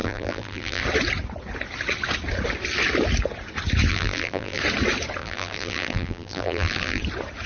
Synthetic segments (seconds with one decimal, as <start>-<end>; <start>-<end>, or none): 0.0-0.8; 3.9-4.6; 5.2-7.0